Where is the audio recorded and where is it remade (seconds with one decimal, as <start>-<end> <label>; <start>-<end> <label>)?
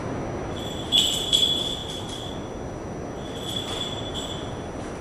0.0-1.8 recorded; 1.8-2.3 remade; 2.3-5.0 recorded